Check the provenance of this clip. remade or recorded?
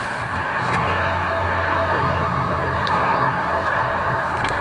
remade